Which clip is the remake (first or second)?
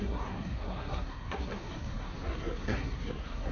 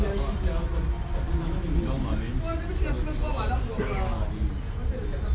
first